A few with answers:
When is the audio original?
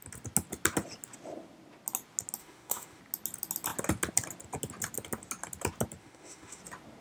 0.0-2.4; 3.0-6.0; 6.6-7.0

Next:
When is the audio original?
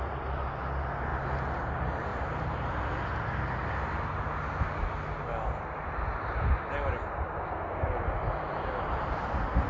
0.0-2.1; 2.9-9.7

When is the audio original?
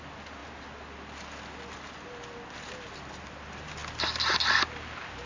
0.0-5.3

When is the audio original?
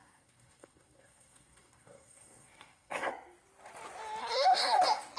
3.1-4.2; 4.8-5.2